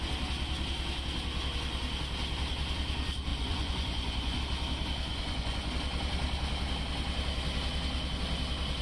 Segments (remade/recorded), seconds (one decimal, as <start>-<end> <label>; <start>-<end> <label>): 0.0-3.3 recorded; 3.3-4.4 remade; 4.4-5.1 recorded; 5.1-5.7 remade; 5.7-8.8 recorded